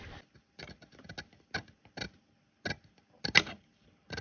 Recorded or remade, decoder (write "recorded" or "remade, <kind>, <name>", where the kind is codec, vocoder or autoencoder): recorded